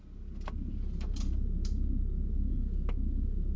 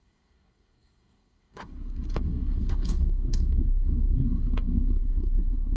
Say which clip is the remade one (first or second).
second